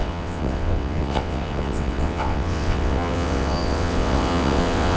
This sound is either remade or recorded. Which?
remade